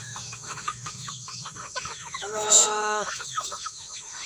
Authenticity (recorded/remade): remade